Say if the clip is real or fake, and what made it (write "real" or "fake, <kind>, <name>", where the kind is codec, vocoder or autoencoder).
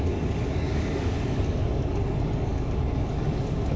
fake, codec, DAC